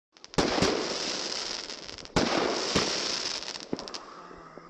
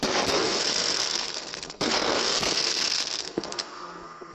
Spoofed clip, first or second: second